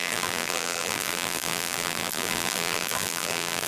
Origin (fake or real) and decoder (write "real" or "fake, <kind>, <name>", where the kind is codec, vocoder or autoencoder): fake, vocoder, BigVGAN v2